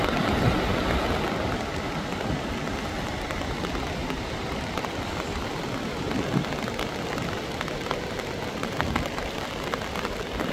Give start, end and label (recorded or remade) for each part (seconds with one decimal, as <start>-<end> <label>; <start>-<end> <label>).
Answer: 0.0-4.0 recorded; 4.0-4.9 remade; 4.9-10.5 recorded